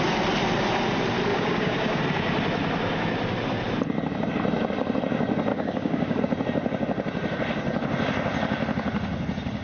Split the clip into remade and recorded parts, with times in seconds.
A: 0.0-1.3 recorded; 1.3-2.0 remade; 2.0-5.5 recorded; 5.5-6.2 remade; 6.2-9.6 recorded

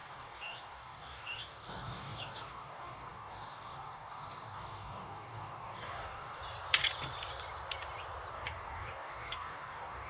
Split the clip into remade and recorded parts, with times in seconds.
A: 0.0-6.4 remade; 6.4-8.3 recorded; 8.3-10.1 remade

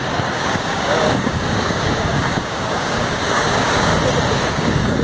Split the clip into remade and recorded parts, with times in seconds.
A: 0.0-3.9 remade; 3.9-4.5 recorded; 4.5-5.0 remade

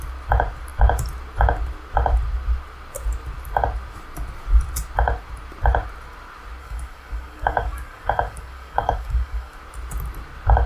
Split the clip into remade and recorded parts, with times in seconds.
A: 0.0-6.6 recorded; 6.6-9.6 remade; 9.6-10.7 recorded

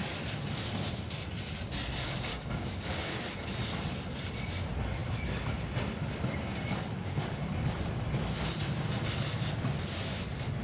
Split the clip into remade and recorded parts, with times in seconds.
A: 0.0-2.3 recorded; 2.3-3.3 remade; 3.3-10.6 recorded

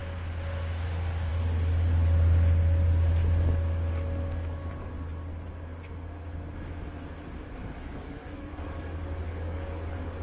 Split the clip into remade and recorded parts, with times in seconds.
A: 0.0-7.6 recorded; 7.6-10.2 remade